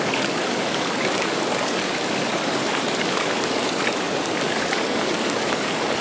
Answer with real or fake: fake